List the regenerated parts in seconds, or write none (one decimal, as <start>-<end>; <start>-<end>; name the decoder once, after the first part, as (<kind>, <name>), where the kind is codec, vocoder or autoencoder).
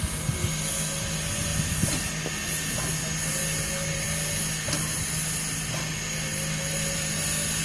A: none